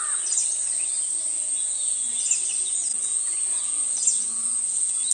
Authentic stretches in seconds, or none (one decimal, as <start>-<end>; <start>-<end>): 0.0-1.3; 2.1-2.9